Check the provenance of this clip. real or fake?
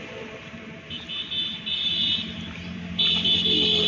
fake